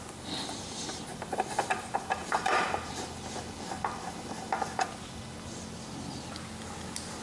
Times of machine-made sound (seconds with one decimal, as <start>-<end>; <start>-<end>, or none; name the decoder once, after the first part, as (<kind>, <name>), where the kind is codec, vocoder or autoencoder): 1.1-2.9 (vocoder, BigVGAN v2)